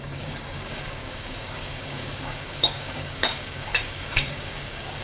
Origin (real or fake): fake